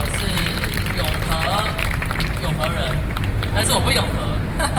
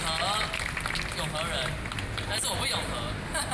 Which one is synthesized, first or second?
first